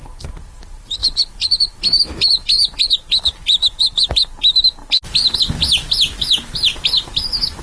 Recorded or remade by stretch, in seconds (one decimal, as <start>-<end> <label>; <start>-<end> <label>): 0.0-7.6 recorded